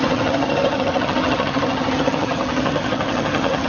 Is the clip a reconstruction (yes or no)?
yes